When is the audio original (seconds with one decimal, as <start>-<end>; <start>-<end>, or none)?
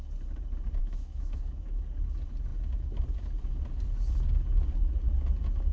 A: 0.0-0.8; 1.8-5.7